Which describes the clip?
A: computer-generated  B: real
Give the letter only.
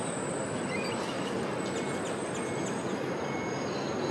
B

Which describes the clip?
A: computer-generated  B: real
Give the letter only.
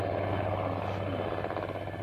B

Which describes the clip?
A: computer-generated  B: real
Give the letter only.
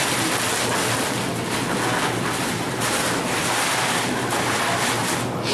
B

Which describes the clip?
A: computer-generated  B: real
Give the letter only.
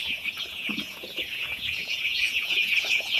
A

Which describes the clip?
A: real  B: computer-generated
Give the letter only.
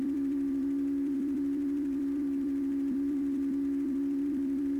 B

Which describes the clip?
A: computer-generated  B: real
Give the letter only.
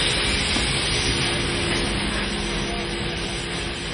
B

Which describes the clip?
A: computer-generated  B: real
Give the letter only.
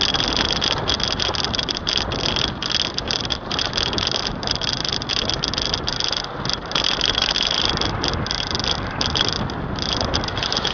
B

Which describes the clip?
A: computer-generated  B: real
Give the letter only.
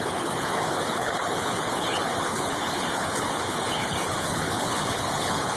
A